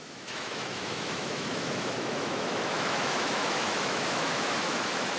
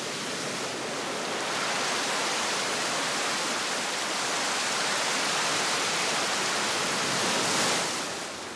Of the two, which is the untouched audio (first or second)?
second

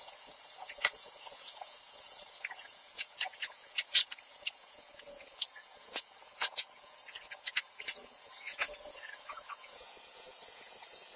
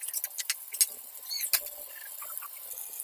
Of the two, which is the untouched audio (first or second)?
second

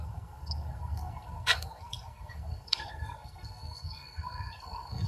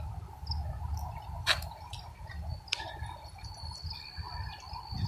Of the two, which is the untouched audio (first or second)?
second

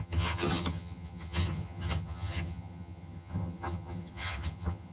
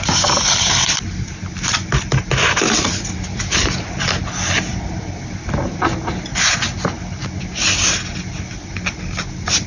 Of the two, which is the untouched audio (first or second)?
second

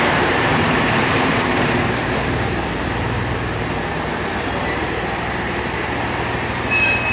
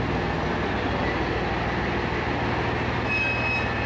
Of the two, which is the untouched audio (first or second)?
second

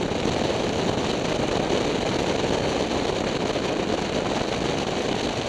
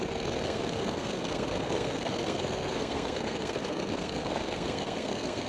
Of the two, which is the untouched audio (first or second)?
first